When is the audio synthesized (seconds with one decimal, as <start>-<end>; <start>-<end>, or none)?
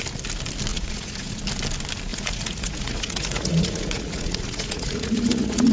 0.7-1.4; 2.1-5.7